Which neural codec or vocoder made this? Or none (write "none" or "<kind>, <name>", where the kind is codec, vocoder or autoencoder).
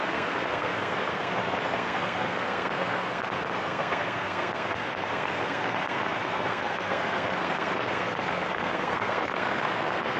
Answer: codec, SNAC